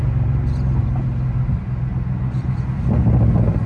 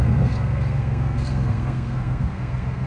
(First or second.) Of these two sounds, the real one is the first